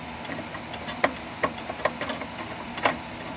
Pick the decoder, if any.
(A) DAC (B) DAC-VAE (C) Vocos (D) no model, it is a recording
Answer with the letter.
D